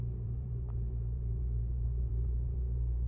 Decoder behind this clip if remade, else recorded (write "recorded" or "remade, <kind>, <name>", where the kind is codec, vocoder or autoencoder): remade, vocoder, BigVGAN v2